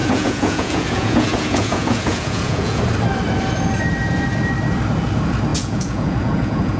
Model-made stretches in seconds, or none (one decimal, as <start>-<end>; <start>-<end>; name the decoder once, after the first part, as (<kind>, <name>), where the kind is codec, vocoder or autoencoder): 0.0-2.8 (vocoder, Vocos); 5.5-6.8